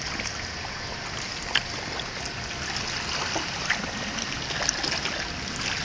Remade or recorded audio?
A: recorded